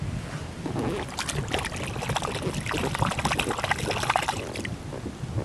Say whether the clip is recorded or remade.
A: recorded